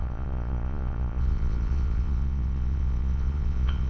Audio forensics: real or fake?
fake